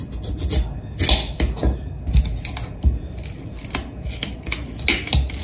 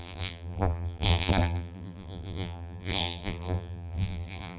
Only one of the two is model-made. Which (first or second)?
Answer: second